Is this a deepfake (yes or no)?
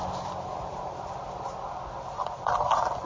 no